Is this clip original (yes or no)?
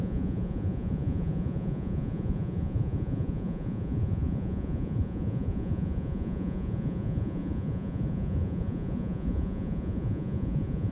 no